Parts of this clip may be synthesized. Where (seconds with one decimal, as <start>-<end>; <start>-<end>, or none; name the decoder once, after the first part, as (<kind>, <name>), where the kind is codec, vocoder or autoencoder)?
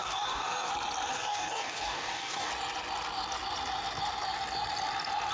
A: 0.0-0.7 (codec, DAC); 1.1-2.5